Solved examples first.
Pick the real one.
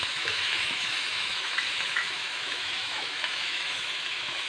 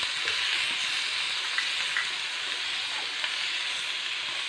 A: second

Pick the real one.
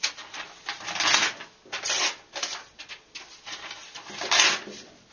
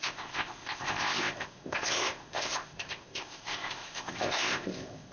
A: first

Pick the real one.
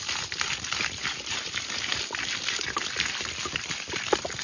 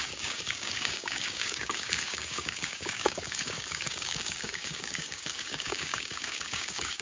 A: first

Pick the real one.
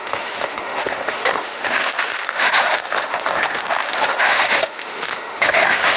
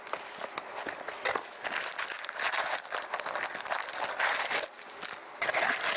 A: second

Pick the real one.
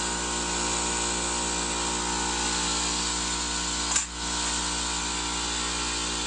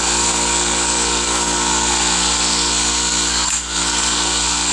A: first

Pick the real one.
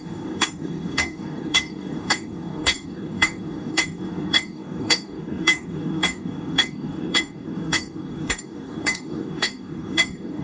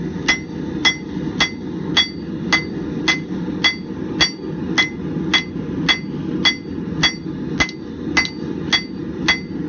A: second